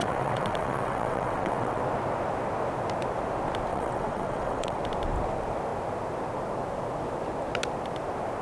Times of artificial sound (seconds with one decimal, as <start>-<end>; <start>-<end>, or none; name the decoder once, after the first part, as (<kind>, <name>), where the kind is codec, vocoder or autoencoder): 0.0-1.8 (vocoder, WaveNeXt); 3.7-4.8